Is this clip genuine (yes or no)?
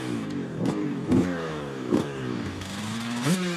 no